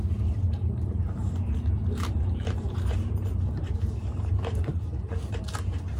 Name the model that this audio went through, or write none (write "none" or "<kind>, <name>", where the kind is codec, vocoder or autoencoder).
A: vocoder, BigVGAN v2